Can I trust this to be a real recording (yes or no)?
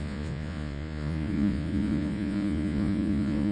no